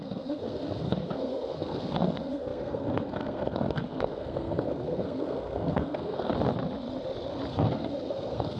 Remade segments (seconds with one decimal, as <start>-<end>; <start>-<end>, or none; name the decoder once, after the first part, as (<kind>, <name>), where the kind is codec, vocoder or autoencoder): 0.0-6.3 (codec, SNAC); 7.5-8.6